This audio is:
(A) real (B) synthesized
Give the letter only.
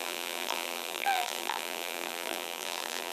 B